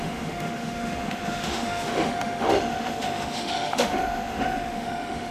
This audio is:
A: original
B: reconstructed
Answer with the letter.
B